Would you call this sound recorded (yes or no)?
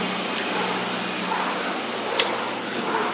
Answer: yes